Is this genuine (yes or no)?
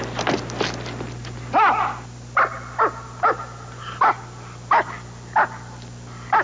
yes